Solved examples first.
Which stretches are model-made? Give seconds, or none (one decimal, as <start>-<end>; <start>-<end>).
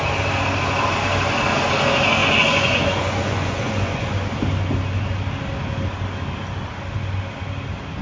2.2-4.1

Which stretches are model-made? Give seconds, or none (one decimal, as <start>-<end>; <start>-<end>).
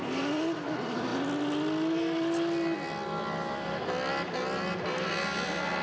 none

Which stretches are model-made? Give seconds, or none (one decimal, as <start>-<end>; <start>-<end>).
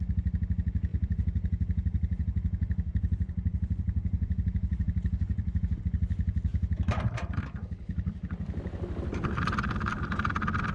0.9-5.8; 6.5-7.3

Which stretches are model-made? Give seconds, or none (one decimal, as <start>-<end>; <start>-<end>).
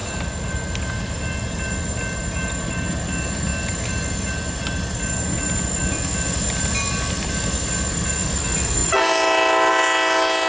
none